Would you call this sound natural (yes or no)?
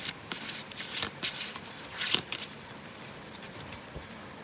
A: no